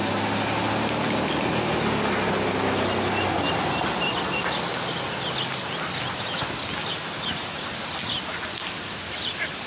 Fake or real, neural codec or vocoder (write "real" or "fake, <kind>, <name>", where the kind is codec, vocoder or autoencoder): real